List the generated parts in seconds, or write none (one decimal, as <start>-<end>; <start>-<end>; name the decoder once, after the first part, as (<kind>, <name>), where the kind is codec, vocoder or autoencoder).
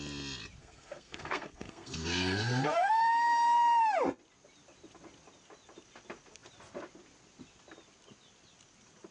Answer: 0.6-3.1 (codec, SNAC)